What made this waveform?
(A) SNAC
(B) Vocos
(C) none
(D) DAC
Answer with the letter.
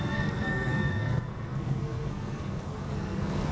A